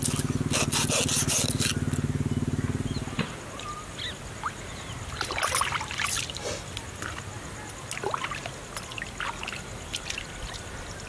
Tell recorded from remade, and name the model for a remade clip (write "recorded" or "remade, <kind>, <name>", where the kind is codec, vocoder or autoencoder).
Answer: recorded